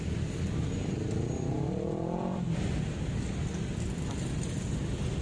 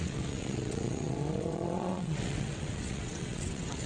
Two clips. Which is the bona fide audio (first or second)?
first